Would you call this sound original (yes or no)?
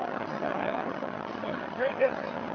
no